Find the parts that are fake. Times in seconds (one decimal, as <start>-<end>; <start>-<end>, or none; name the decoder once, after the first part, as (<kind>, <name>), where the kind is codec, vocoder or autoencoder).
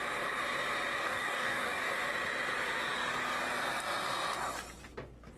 1.0-1.9 (codec, DAC)